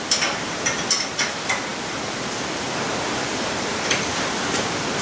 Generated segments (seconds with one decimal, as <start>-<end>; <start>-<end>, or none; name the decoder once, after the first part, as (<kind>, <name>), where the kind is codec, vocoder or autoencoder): 0.0-5.0 (vocoder, BigVGAN v2)